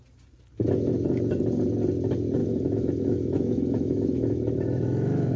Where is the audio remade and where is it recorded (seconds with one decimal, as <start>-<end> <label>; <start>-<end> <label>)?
0.0-2.4 recorded; 2.4-5.4 remade